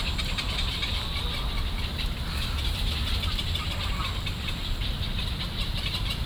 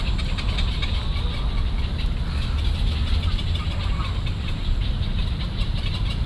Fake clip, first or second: first